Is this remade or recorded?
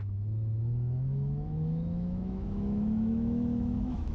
remade